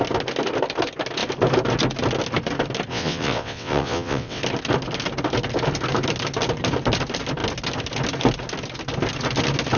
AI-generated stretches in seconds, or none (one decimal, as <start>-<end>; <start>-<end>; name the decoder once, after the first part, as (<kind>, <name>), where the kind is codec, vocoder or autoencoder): 2.9-4.4 (vocoder, WaveNeXt)